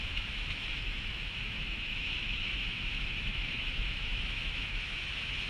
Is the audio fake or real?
fake